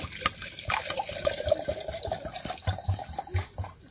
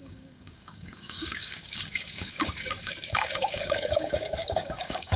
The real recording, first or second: first